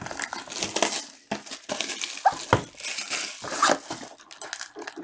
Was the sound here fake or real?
real